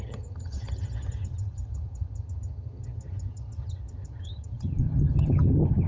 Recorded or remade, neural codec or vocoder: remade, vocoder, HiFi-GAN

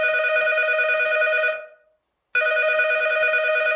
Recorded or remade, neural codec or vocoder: recorded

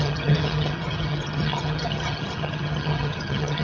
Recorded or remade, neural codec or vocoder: remade, vocoder, HiFi-GAN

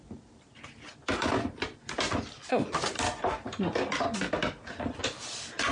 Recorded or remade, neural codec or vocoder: recorded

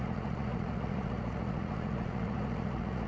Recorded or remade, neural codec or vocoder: remade, vocoder, Vocos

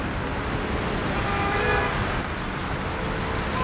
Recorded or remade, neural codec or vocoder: recorded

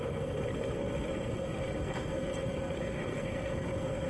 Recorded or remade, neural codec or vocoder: remade, codec, SNAC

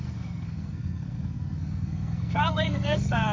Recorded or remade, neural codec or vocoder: remade, codec, SNAC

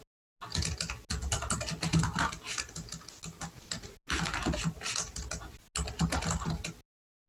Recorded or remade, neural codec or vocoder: recorded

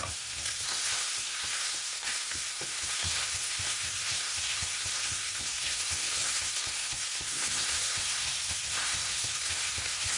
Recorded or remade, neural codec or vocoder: remade, codec, SNAC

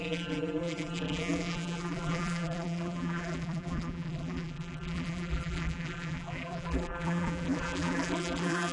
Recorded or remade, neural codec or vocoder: remade, vocoder, BigVGAN v2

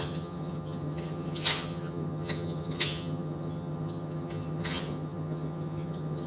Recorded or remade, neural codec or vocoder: remade, vocoder, HiFi-GAN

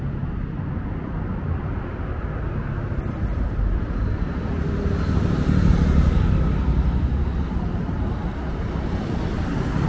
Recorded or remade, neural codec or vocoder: recorded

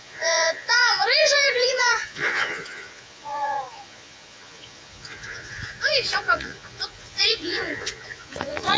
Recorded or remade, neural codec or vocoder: remade, vocoder, Vocos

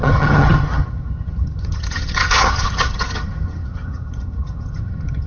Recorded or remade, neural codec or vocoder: remade, vocoder, HiFi-GAN